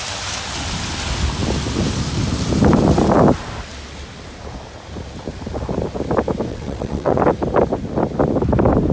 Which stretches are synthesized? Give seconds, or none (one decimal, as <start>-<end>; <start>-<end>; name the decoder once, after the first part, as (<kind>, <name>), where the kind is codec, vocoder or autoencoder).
6.5-7.2 (vocoder, WaveNeXt)